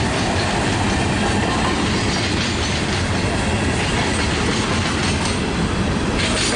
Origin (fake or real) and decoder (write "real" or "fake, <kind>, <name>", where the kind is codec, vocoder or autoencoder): real